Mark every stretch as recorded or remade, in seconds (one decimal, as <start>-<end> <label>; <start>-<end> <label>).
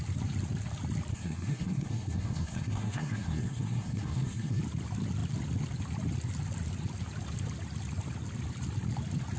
0.0-1.1 recorded; 1.1-4.6 remade; 4.6-9.4 recorded